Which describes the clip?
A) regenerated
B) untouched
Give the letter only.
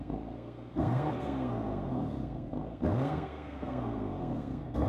A